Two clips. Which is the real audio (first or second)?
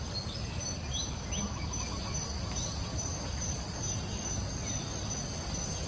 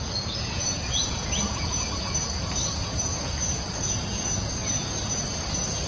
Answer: first